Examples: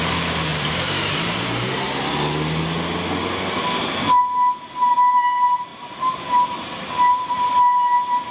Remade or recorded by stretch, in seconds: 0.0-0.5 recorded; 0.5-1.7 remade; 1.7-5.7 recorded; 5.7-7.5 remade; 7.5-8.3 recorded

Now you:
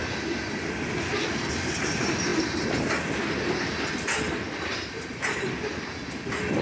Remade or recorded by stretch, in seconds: 0.0-6.6 recorded

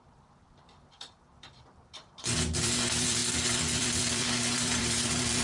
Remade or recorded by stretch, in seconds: 0.0-5.4 remade

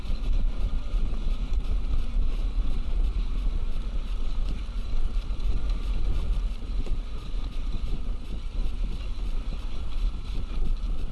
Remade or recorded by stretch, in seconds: 0.0-5.5 remade; 5.5-6.5 recorded; 6.5-8.6 remade; 8.6-10.1 recorded; 10.1-11.1 remade

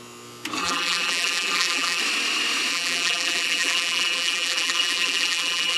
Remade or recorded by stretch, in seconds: 0.0-0.6 recorded; 0.6-2.0 remade; 2.0-2.7 recorded; 2.7-5.8 remade

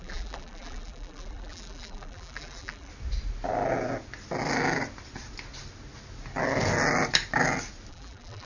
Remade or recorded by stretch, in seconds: 0.0-2.9 remade; 2.9-7.9 recorded; 7.9-8.5 remade